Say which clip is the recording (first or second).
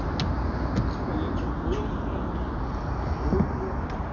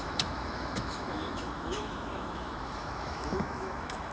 first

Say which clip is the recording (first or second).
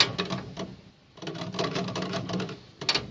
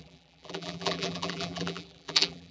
first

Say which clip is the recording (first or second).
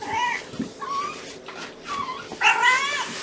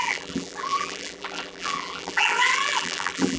first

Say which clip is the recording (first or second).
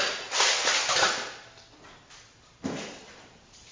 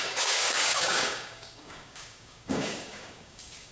first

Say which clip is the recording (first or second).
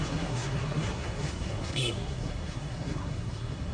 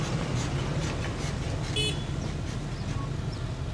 second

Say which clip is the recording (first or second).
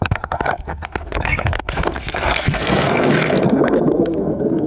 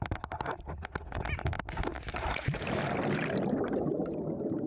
second